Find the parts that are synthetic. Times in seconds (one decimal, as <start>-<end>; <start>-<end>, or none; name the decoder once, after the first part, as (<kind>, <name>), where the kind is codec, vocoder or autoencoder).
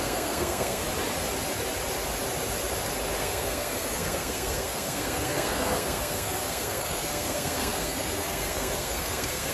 0.0-0.8 (codec, SNAC); 3.2-9.5